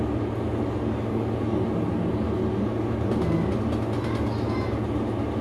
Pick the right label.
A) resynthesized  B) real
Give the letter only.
B